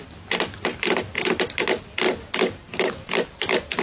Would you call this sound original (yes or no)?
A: yes